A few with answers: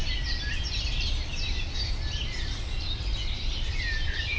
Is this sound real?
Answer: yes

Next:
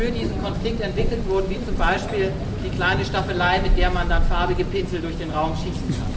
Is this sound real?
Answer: yes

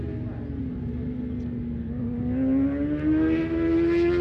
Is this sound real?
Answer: yes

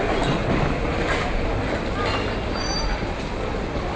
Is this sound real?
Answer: yes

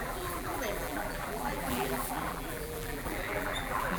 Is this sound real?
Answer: no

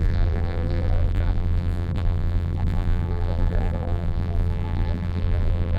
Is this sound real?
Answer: no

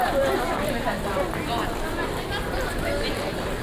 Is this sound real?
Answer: yes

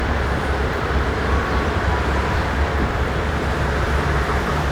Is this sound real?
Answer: no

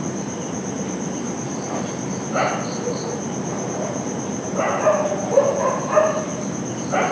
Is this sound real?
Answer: no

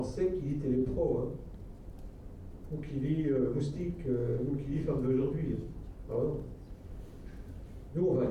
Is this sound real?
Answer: yes